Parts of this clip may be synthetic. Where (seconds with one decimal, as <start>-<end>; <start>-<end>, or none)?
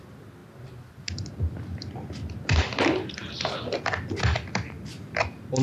none